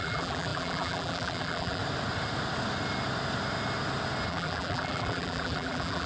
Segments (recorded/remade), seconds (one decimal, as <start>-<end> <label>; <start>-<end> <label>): 0.0-1.8 remade; 1.8-4.3 recorded; 4.3-6.1 remade